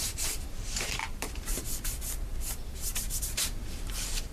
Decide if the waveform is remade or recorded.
remade